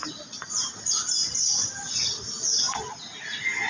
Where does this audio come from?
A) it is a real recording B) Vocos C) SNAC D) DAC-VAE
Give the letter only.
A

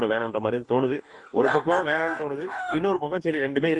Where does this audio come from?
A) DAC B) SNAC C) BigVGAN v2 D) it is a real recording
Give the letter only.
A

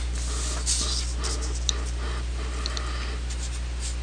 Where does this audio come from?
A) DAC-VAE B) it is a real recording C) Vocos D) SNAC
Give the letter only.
B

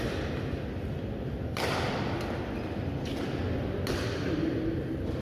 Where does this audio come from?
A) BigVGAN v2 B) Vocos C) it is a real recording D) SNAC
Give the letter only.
C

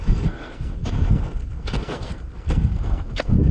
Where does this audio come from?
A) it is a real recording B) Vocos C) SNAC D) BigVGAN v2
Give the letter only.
C